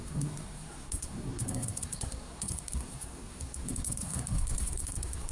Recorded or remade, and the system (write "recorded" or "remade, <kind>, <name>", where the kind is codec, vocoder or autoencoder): remade, codec, SNAC